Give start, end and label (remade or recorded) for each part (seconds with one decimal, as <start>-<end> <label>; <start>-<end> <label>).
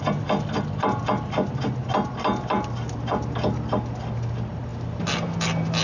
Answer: 0.0-5.8 recorded